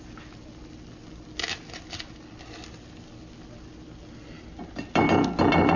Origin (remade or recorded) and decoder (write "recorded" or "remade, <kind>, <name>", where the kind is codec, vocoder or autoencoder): recorded